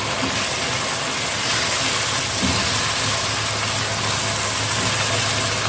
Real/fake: real